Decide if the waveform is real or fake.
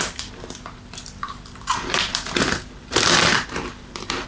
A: fake